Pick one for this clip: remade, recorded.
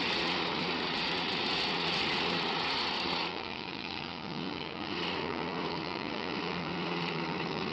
remade